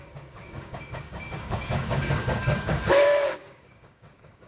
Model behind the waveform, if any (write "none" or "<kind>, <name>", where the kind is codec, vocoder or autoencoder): codec, DAC